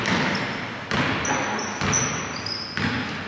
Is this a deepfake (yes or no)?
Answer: no